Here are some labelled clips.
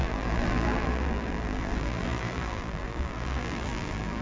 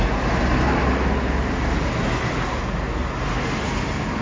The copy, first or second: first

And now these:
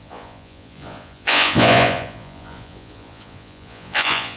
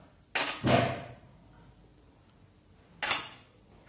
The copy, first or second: first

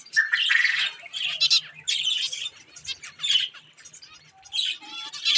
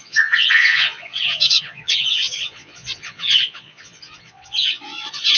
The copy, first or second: second